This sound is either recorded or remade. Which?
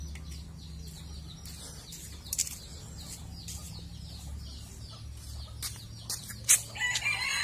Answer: recorded